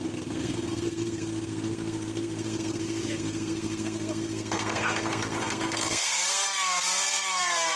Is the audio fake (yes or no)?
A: yes